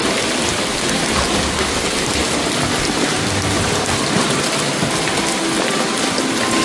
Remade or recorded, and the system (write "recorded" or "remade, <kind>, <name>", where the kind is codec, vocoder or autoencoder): recorded